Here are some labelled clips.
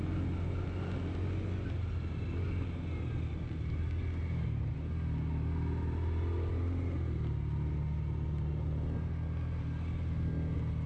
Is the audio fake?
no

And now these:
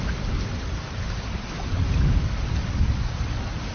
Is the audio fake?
no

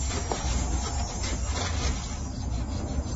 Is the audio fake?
no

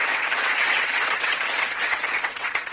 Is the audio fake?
yes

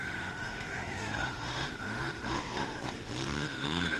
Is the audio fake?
yes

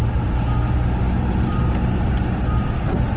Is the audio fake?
no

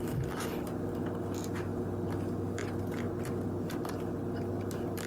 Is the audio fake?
no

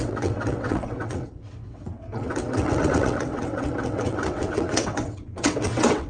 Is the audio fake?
yes